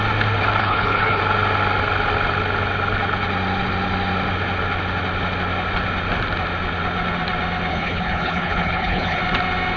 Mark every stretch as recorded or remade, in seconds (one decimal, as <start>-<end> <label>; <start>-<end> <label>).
0.0-0.6 recorded; 0.6-1.2 remade; 1.2-7.7 recorded; 7.7-9.2 remade; 9.2-9.8 recorded